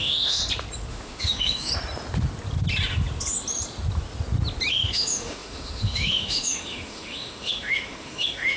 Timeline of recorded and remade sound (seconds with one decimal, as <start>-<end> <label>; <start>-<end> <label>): 0.0-0.4 remade; 0.4-0.9 recorded; 0.9-1.7 remade; 1.7-4.7 recorded; 4.7-8.6 remade